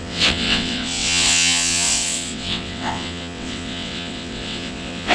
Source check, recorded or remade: remade